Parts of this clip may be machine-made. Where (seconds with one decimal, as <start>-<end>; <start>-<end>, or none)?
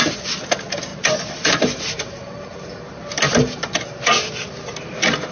0.9-4.0